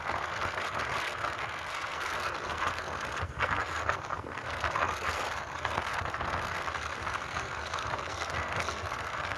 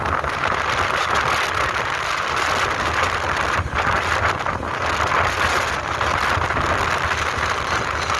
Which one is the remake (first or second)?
first